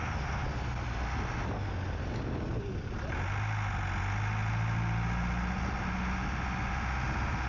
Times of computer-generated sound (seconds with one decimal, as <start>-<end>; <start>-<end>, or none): none